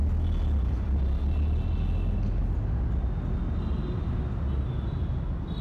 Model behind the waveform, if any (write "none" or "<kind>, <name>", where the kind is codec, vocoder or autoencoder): none